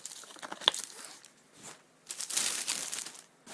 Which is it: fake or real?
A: real